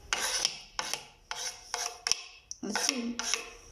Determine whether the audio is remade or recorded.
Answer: recorded